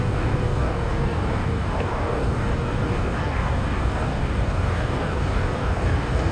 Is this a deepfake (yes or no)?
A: yes